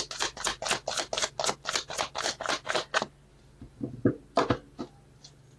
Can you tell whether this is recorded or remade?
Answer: recorded